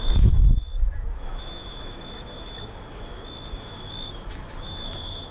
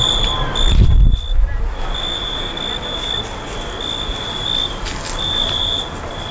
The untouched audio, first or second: second